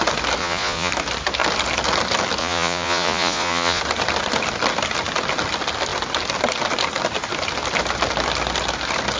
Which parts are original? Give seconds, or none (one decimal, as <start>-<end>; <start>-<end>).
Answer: 0.0-0.4; 0.9-2.4; 3.8-9.2